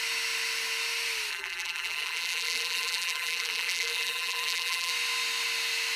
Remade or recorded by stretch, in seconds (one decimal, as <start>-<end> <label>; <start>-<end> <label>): 0.0-1.3 recorded; 1.3-4.9 remade; 4.9-6.0 recorded

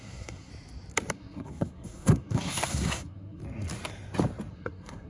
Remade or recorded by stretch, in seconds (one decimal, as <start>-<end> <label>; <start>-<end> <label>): 0.0-0.5 remade; 0.5-1.1 recorded; 1.1-3.4 remade; 3.4-4.5 recorded; 4.5-5.1 remade

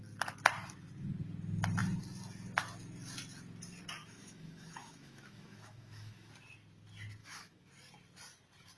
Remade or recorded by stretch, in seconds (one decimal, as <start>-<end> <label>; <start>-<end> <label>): 0.0-4.0 recorded; 4.0-6.3 remade; 6.3-7.2 recorded; 7.2-7.7 remade; 7.7-8.8 recorded

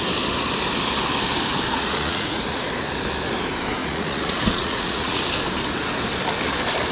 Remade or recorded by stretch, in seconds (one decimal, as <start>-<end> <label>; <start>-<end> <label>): 0.0-1.7 recorded; 1.7-2.6 remade; 2.6-3.8 recorded; 3.8-5.2 remade; 5.2-6.9 recorded

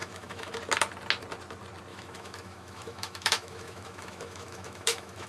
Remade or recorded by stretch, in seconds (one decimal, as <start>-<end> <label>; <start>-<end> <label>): 0.0-0.5 remade; 0.5-1.9 recorded; 1.9-5.3 remade